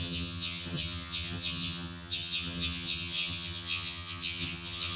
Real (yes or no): no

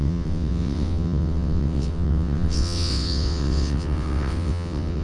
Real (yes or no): no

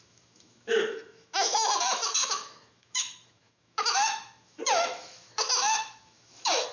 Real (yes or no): no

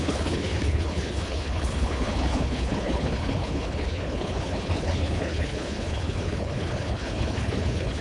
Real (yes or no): no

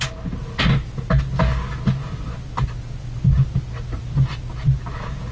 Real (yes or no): yes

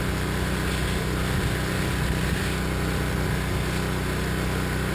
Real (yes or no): yes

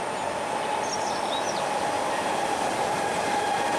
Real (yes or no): yes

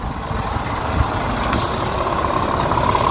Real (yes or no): yes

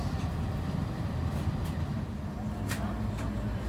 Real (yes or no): yes